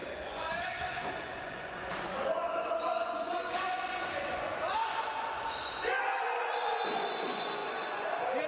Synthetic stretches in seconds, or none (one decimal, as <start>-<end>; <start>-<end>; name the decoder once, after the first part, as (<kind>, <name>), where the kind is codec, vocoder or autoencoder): 0.0-8.5 (vocoder, Vocos)